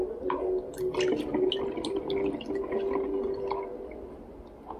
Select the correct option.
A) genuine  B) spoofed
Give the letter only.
A